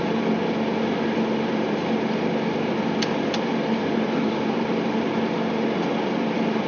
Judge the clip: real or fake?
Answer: fake